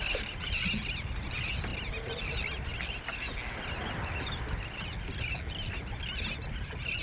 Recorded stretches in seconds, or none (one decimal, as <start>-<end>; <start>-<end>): 0.0-7.0